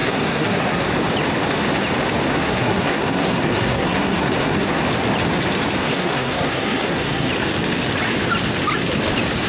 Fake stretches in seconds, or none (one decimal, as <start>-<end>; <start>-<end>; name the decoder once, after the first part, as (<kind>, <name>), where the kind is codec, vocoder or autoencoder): 0.0-0.9 (codec, SNAC); 2.3-4.8; 5.8-7.3